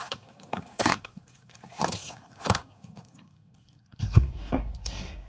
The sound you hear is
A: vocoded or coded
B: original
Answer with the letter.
A